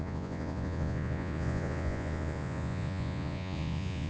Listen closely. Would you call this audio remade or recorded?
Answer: remade